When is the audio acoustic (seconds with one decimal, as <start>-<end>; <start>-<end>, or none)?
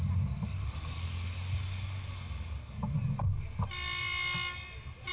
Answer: 0.0-5.1